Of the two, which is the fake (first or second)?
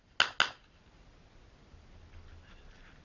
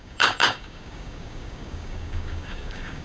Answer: second